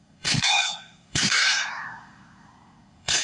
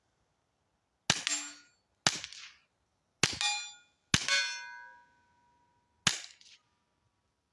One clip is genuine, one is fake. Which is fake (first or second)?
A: first